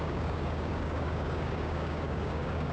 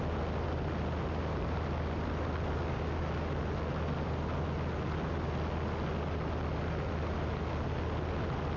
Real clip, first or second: second